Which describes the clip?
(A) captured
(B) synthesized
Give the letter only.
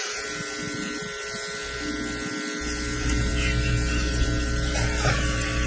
A